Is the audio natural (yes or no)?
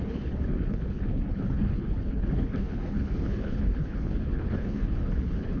no